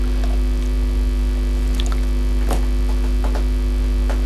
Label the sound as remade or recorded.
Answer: recorded